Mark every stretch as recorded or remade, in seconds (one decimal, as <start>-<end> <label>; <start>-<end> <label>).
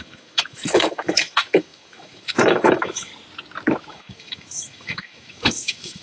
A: 0.0-3.1 remade; 3.1-3.9 recorded; 3.9-6.0 remade